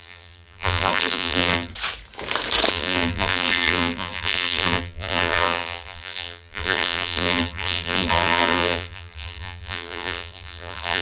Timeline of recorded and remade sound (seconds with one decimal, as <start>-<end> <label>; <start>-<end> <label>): 0.0-1.7 remade; 1.7-2.7 recorded; 2.7-11.0 remade

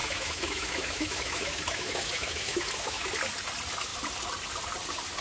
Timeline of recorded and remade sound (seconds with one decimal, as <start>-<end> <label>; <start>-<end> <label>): 0.0-3.1 remade; 3.1-5.2 recorded

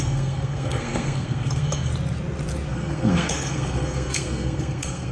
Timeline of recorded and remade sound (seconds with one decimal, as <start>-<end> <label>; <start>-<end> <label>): 0.0-1.9 remade; 1.9-2.7 recorded; 2.7-5.1 remade

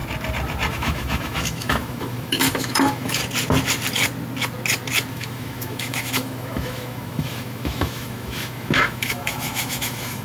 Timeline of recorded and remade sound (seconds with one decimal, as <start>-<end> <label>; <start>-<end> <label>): 0.0-0.7 recorded; 0.7-3.2 remade; 3.2-5.1 recorded; 5.1-10.2 remade

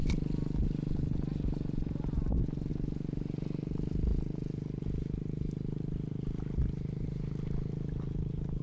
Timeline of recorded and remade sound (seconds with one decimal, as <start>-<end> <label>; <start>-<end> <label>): 0.0-8.6 recorded

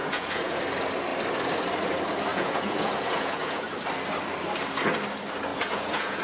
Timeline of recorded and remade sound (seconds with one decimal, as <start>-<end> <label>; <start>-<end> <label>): 0.0-0.6 remade; 0.6-2.3 recorded; 2.3-3.7 remade; 3.7-5.5 recorded; 5.5-6.2 remade